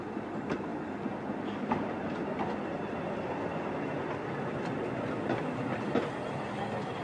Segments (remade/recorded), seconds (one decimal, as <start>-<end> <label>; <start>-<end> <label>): 0.0-7.0 recorded